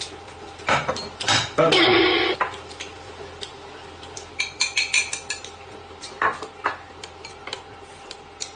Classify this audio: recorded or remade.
recorded